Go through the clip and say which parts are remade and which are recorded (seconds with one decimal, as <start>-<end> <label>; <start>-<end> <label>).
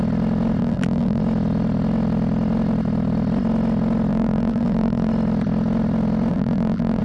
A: 0.0-0.6 recorded; 0.6-1.2 remade; 1.2-4.1 recorded; 4.1-5.1 remade; 5.1-6.3 recorded; 6.3-7.0 remade